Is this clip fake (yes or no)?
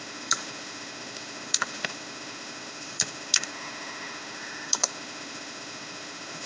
yes